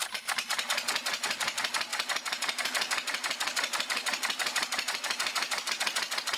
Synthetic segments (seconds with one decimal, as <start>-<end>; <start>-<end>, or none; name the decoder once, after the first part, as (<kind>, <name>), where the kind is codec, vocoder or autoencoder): 1.9-5.7 (vocoder, BigVGAN v2)